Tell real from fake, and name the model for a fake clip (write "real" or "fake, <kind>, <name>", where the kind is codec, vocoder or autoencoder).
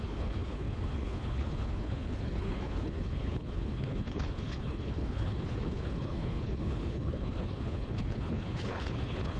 fake, codec, HILCodec